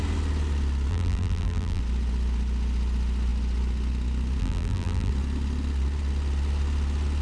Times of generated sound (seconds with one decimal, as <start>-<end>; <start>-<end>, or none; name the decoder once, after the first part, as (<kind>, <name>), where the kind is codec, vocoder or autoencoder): 0.9-1.8 (vocoder, BigVGAN v2); 4.4-5.1